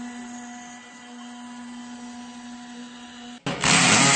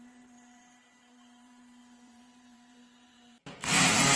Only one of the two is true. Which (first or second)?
first